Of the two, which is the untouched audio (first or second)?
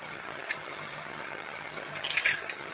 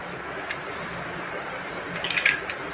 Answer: second